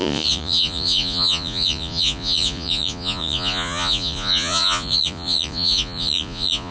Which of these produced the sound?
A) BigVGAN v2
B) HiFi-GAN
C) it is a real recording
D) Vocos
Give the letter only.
D